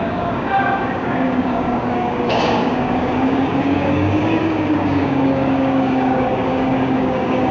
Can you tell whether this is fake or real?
fake